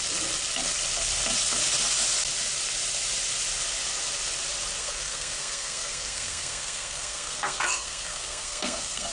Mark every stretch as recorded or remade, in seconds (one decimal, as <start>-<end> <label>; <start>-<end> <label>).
0.0-4.8 recorded; 4.8-9.1 remade